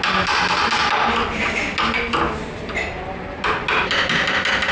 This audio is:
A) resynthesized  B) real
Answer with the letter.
B